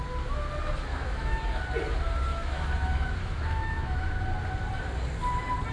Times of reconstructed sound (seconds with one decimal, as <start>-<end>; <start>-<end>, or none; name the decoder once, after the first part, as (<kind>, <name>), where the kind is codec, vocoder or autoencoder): 0.9-1.6 (autoencoder, DAC-VAE); 2.3-4.1